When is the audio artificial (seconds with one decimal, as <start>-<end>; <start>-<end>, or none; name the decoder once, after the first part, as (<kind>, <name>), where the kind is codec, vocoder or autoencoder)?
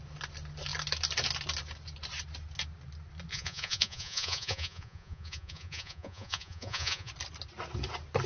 3.3-7.1 (vocoder, Vocos)